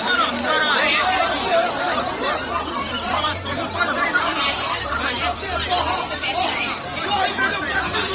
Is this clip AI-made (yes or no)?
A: yes